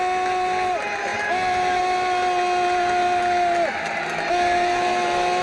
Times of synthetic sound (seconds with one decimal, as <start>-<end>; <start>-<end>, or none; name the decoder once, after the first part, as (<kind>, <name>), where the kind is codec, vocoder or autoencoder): none